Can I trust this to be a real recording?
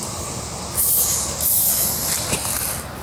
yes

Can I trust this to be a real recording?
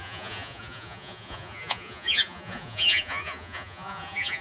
no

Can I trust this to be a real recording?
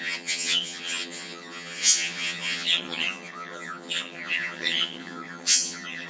no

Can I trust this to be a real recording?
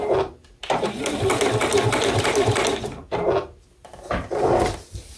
yes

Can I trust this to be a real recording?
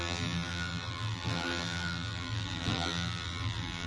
no